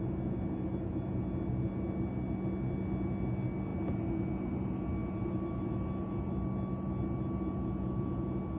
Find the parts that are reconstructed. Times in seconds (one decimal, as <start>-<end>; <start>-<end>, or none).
none